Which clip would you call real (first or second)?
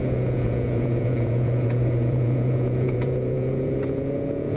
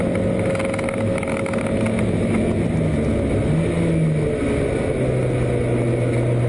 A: second